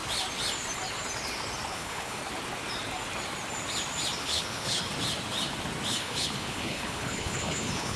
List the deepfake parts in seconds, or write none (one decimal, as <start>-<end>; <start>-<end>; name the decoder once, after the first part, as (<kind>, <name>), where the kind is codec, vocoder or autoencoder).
1.7-2.2 (codec, HILCodec); 4.2-4.9; 5.9-8.0